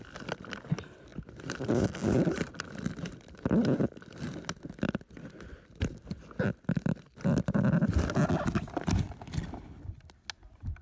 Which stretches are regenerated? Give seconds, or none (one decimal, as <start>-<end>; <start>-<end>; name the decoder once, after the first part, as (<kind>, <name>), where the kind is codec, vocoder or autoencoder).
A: none